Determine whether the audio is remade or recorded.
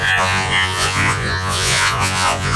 remade